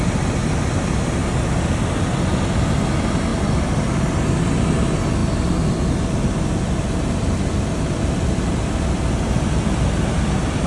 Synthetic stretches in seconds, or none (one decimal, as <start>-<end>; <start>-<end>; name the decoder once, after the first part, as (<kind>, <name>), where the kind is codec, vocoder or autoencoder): 3.3-4.1 (vocoder, BigVGAN v2); 5.2-9.4